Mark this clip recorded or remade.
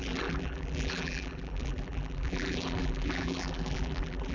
remade